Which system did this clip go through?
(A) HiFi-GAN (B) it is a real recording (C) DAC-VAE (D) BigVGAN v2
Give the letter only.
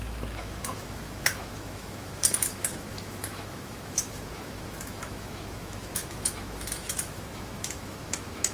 C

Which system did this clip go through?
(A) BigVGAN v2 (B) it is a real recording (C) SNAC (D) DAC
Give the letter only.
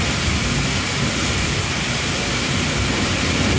B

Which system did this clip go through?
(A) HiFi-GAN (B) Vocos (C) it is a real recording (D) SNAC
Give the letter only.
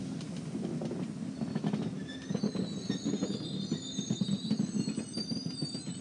C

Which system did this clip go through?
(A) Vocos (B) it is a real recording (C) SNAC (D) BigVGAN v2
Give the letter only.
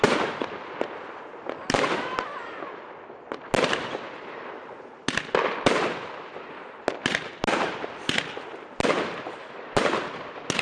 B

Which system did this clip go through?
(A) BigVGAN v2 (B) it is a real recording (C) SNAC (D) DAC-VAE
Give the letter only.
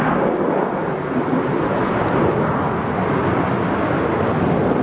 B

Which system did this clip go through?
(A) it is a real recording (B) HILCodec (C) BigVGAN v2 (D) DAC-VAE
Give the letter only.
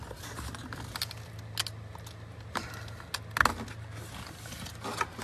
A